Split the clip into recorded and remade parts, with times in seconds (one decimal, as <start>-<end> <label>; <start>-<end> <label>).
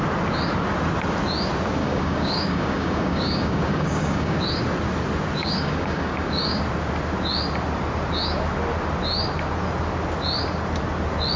0.0-1.8 recorded; 1.8-4.4 remade; 4.4-5.4 recorded; 5.4-6.6 remade; 6.6-11.4 recorded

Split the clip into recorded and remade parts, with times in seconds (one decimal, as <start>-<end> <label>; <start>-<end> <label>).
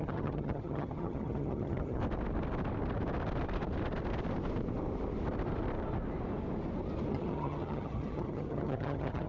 0.0-2.0 remade; 2.0-7.1 recorded; 7.1-9.3 remade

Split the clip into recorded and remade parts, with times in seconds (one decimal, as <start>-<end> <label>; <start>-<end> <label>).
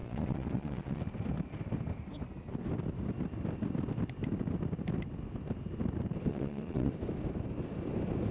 0.0-1.0 remade; 1.0-6.3 recorded; 6.3-6.9 remade; 6.9-8.3 recorded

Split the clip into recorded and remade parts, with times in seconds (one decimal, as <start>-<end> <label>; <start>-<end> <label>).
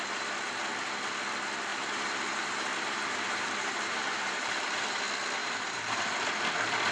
0.0-1.7 recorded; 1.7-5.0 remade; 5.0-5.4 recorded; 5.4-6.0 remade; 6.0-6.9 recorded